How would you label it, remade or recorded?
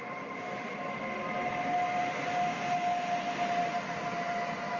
recorded